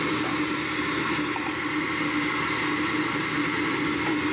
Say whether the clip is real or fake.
real